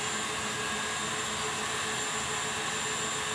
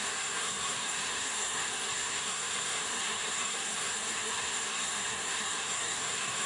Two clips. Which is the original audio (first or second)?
first